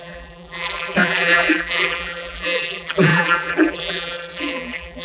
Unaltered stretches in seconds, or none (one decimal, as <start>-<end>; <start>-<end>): none